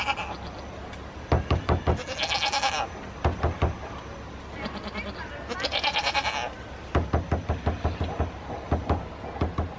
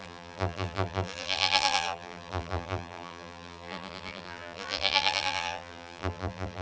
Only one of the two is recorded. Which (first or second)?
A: first